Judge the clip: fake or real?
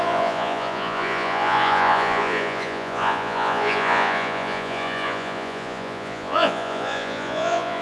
fake